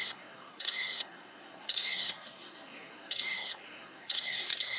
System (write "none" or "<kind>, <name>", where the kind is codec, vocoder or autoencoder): codec, SNAC